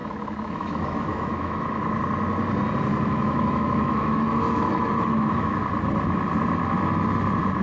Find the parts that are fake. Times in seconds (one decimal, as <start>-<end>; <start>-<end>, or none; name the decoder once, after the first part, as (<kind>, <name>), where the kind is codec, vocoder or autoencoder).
0.0-2.0 (autoencoder, DAC-VAE); 2.9-5.6